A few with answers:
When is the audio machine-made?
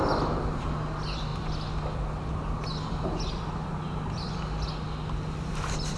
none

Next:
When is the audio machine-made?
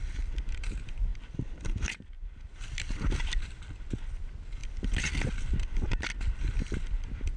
1.1-3.7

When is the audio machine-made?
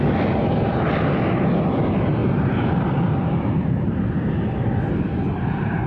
2.2-4.1; 5.1-5.9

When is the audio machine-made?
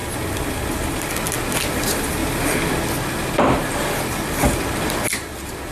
0.0-1.1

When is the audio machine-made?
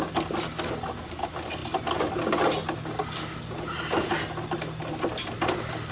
none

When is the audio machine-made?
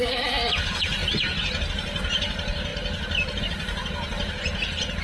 none